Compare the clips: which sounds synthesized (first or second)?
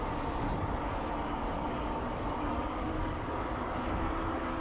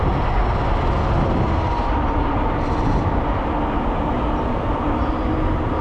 first